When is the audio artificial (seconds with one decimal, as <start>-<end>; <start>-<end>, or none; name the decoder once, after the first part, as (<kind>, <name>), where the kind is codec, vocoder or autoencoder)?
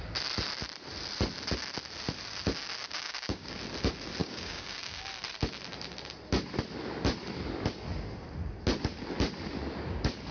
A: 2.8-3.6 (codec, DAC); 4.2-5.1